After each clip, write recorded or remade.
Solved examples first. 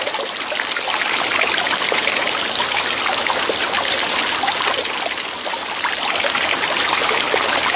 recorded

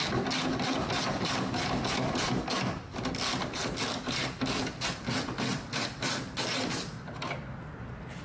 recorded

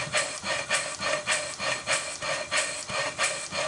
recorded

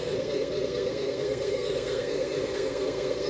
remade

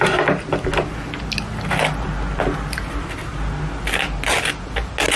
recorded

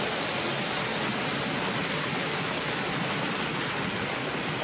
recorded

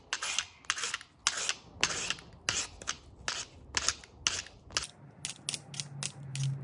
recorded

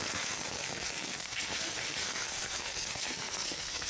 remade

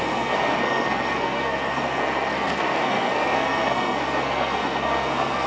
remade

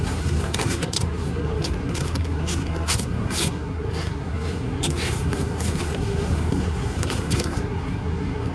remade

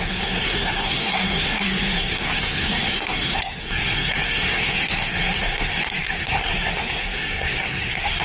remade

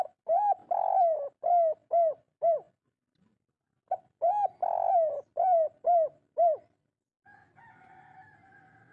recorded